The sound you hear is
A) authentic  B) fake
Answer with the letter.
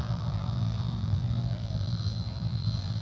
B